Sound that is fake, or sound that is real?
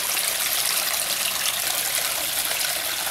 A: real